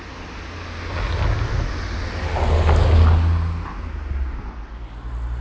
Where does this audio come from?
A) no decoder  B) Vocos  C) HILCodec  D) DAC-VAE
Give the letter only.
A